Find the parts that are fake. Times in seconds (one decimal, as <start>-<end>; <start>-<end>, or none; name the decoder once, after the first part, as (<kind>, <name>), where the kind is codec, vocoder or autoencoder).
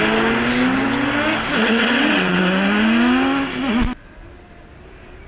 1.6-2.4 (vocoder, WaveNeXt)